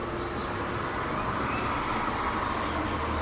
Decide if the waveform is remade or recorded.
recorded